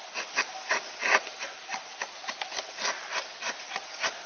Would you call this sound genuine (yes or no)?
yes